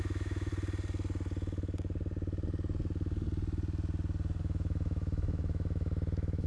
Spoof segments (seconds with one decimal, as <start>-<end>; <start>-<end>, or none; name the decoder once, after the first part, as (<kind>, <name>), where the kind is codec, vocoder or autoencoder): 0.0-0.5 (autoencoder, DAC-VAE); 4.4-6.5